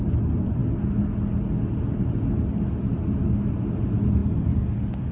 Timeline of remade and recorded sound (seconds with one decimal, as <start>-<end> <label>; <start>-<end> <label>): 0.0-5.1 recorded